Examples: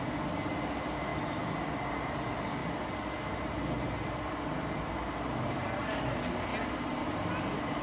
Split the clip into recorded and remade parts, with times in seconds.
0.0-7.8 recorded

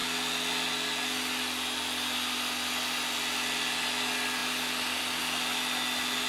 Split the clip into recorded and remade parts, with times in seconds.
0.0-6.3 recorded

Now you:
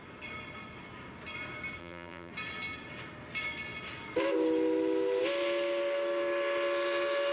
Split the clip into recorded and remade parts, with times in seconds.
0.0-1.8 recorded; 1.8-2.3 remade; 2.3-7.3 recorded

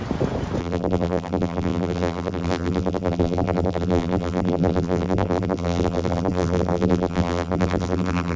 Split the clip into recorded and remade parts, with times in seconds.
0.0-0.6 recorded; 0.6-8.4 remade

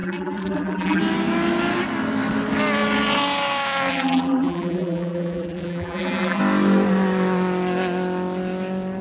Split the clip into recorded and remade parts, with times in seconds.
0.0-1.0 remade; 1.0-3.9 recorded; 3.9-6.4 remade; 6.4-9.0 recorded

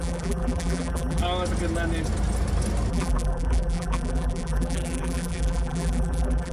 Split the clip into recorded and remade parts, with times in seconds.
0.0-1.2 remade; 1.2-2.9 recorded; 2.9-6.5 remade

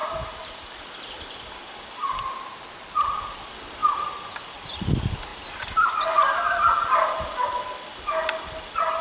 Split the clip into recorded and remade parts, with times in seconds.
0.0-0.8 remade; 0.8-3.8 recorded; 3.8-4.5 remade; 4.5-5.3 recorded; 5.3-6.4 remade; 6.4-9.0 recorded